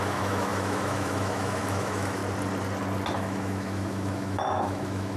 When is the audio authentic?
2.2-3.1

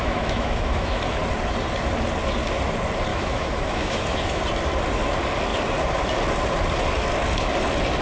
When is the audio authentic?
1.0-3.1; 4.4-8.0

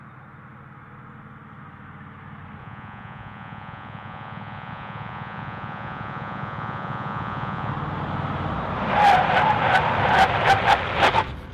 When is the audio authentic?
0.0-2.6; 7.7-11.5

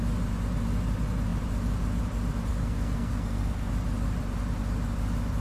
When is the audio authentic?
0.0-2.5; 3.7-5.4

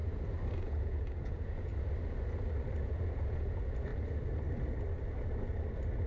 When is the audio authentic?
0.0-0.6; 1.7-2.8; 3.9-6.1

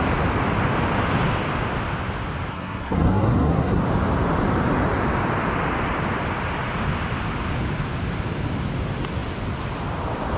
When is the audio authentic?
0.0-2.5; 3.8-10.4